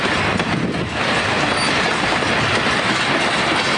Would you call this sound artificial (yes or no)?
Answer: no